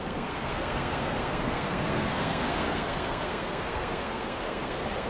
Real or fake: fake